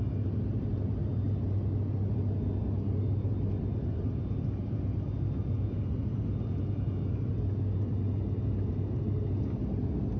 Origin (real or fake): real